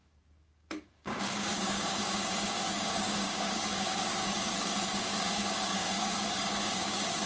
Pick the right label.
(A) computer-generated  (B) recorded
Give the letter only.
A